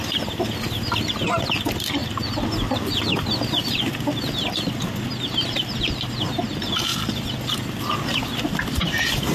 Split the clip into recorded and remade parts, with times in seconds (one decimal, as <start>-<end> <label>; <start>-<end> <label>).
0.0-9.3 recorded